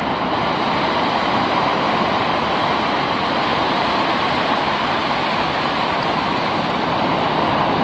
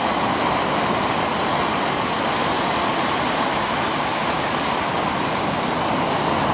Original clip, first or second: second